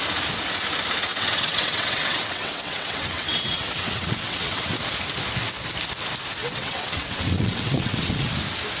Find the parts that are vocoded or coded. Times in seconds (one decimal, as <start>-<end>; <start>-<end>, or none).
1.1-4.7; 6.4-8.3